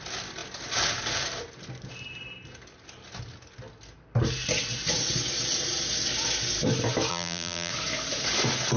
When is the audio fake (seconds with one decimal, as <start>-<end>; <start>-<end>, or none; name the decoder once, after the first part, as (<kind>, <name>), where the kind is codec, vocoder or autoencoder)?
7.1-7.7 (vocoder, BigVGAN v2)